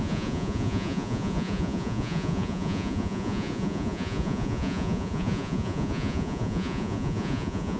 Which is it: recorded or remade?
remade